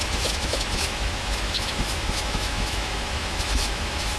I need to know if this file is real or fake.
fake